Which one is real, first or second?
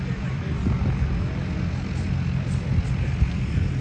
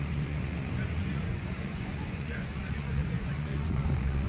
first